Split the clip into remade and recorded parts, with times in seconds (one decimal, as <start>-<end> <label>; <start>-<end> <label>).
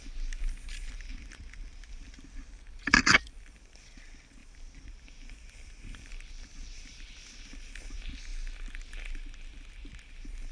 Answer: 0.0-1.1 recorded; 1.1-3.6 remade; 3.6-4.4 recorded; 4.4-7.2 remade; 7.2-10.5 recorded